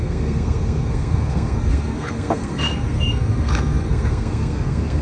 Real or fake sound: fake